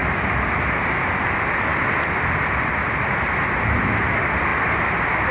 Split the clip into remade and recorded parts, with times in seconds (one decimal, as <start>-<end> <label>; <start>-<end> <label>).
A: 0.0-5.3 recorded